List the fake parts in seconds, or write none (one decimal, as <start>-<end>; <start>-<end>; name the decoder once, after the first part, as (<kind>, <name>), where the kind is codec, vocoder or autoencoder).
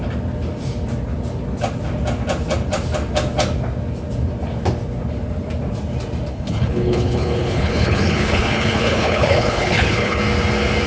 6.3-10.2 (codec, HILCodec)